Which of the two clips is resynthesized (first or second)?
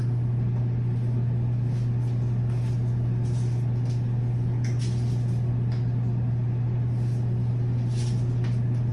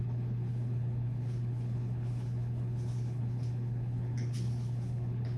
second